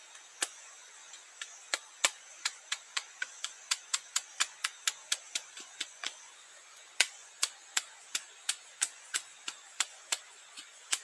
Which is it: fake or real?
fake